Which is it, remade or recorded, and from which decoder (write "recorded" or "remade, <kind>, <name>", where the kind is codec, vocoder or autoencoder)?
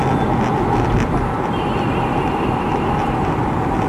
recorded